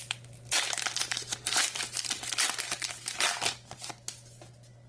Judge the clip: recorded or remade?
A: recorded